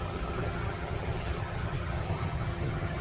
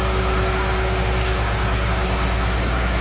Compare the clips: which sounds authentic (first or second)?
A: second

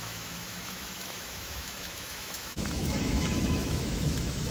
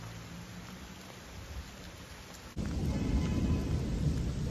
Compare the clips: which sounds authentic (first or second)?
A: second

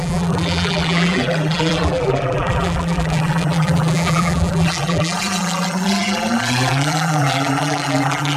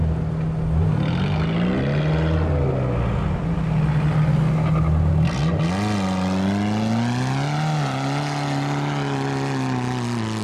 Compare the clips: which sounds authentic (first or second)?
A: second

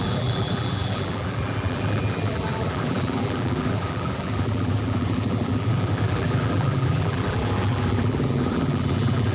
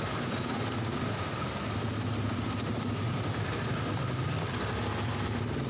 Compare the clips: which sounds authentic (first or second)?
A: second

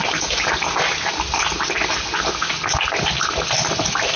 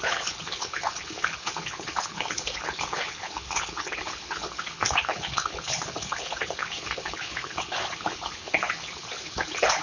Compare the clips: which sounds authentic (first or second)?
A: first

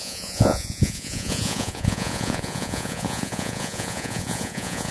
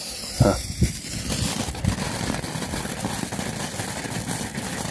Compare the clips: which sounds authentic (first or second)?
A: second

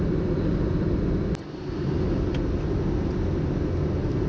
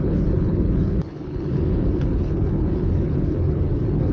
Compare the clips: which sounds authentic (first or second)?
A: first